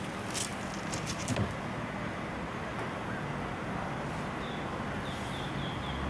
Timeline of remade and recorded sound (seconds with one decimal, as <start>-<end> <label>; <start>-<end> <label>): 0.0-6.1 recorded